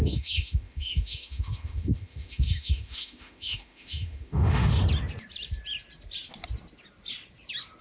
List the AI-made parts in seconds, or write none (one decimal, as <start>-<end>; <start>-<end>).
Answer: 0.0-4.8